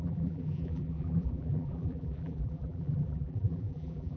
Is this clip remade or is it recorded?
remade